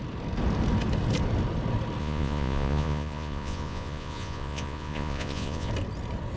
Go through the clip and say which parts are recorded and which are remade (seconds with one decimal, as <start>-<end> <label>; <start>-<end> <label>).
0.0-2.0 recorded; 2.0-5.7 remade; 5.7-6.4 recorded